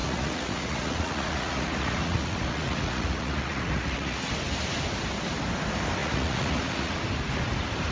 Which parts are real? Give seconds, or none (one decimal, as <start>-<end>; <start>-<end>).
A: 4.3-6.0; 7.0-7.9